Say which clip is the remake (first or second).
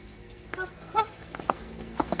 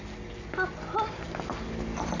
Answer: first